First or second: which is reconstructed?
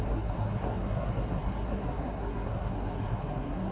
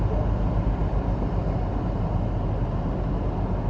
first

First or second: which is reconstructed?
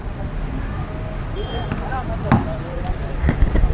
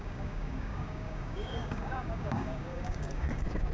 second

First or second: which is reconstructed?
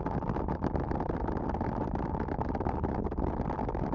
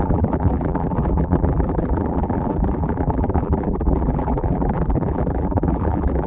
second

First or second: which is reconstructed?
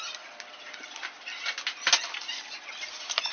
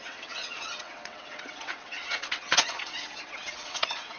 second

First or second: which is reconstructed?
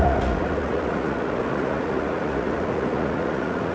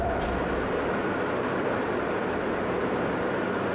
first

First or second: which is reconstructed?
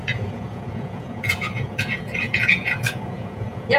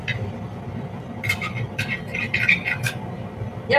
first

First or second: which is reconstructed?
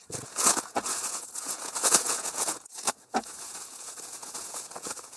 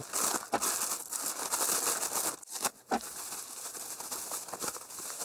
first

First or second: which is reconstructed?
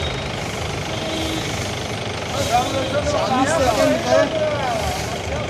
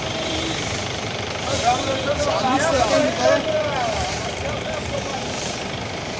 second